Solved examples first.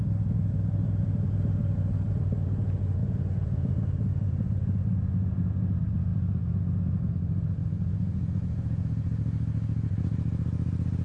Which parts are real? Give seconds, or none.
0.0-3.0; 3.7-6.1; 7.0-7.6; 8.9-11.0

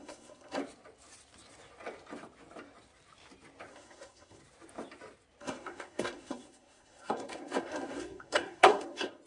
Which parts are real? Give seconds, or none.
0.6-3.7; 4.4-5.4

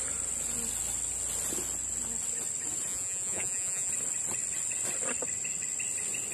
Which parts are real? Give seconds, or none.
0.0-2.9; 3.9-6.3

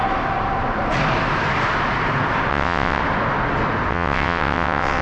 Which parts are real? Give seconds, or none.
0.0-2.5; 3.0-3.9

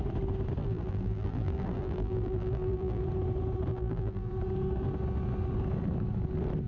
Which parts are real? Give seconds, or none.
0.0-0.6; 3.0-3.7; 4.3-6.7

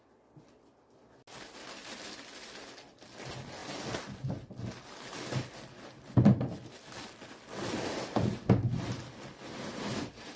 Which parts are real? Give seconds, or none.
0.0-10.4